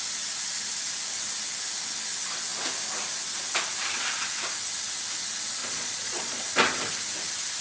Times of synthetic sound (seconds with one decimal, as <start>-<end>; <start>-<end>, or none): 5.6-6.4